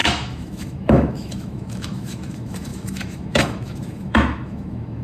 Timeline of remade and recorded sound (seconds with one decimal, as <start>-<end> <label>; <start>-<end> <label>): 0.0-5.0 remade